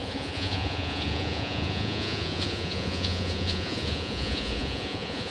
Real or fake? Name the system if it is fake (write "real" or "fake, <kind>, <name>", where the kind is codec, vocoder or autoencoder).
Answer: fake, vocoder, Vocos